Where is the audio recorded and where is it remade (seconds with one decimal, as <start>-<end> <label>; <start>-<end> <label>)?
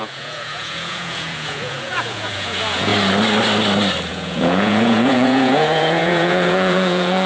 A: 0.0-2.9 remade; 2.9-4.1 recorded; 4.1-7.3 remade